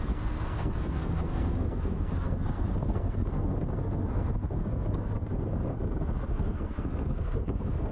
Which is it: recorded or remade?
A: remade